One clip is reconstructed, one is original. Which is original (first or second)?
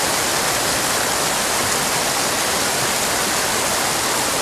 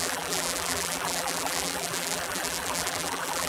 first